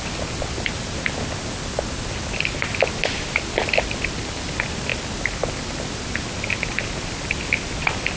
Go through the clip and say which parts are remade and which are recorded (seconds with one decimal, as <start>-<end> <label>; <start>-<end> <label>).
0.0-8.2 recorded